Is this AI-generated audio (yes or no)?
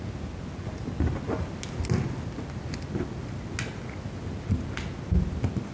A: no